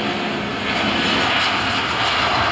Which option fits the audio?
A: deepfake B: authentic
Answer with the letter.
B